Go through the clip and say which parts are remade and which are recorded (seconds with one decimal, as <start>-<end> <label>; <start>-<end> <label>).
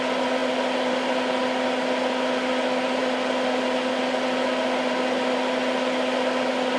0.0-6.8 recorded